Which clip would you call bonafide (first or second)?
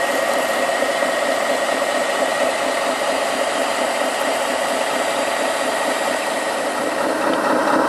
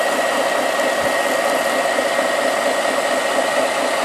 second